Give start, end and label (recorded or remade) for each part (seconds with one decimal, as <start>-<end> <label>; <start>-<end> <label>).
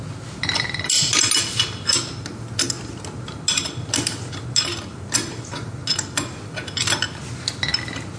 0.0-8.2 recorded